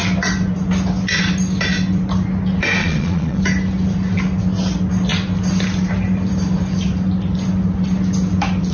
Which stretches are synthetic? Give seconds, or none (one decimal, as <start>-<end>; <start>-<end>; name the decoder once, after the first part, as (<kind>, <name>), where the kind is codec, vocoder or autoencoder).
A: 2.8-3.4 (vocoder, Vocos)